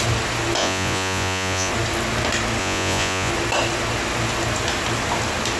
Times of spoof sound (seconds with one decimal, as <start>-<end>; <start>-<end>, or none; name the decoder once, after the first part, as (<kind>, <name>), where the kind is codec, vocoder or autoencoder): 0.6-1.7 (vocoder, Vocos); 2.6-3.3